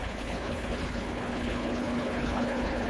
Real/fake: fake